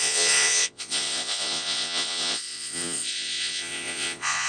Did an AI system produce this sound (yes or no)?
yes